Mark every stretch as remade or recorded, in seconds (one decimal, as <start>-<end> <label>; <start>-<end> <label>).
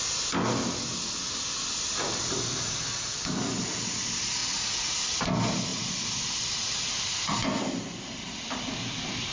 0.0-5.7 recorded; 5.7-7.4 remade; 7.4-9.3 recorded